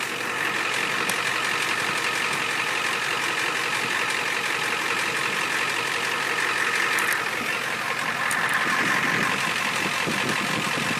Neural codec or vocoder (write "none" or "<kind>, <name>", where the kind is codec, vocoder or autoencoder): none